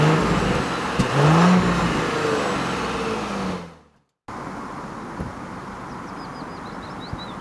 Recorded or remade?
recorded